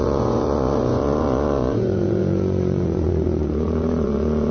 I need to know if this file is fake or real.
fake